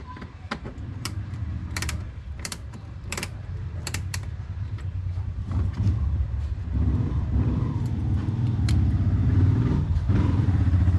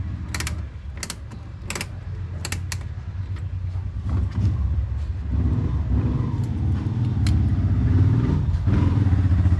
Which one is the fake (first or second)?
first